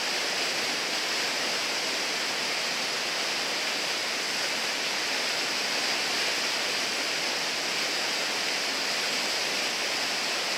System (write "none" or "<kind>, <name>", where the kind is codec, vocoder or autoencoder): none